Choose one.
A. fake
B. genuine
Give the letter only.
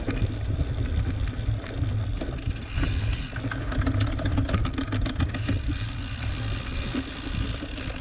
B